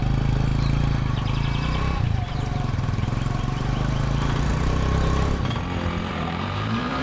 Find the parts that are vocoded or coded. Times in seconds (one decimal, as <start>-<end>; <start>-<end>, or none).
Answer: 0.0-4.5; 6.1-7.0

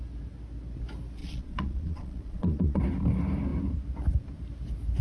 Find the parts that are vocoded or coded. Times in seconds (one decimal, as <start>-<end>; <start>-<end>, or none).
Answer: 1.2-2.8

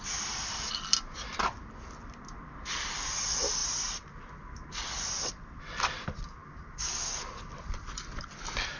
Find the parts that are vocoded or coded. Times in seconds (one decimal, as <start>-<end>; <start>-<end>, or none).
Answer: none

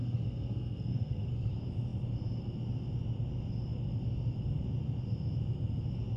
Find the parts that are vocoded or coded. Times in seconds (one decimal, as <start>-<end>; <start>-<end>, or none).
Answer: 0.0-1.5

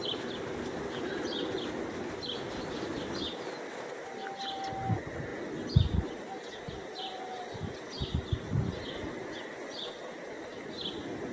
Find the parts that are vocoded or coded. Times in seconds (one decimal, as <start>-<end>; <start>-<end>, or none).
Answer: none

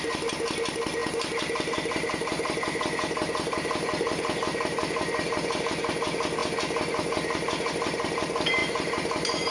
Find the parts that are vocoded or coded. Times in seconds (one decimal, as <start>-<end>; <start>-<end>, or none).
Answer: 8.6-9.5

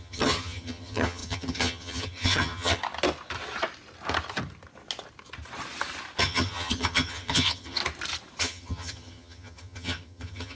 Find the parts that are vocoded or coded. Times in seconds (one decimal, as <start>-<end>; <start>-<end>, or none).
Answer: 0.0-2.8; 6.2-7.8; 8.4-10.6